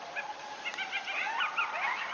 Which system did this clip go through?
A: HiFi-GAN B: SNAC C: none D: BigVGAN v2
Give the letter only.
C